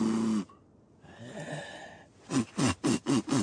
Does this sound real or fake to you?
real